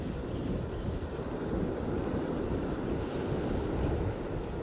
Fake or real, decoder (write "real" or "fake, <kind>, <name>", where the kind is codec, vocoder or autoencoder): real